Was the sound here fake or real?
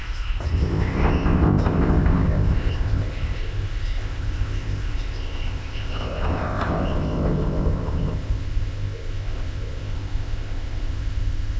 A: fake